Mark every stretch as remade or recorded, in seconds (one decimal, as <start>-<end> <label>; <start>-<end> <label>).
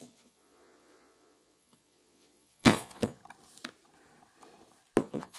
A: 0.0-3.2 remade; 3.2-5.0 recorded; 5.0-5.4 remade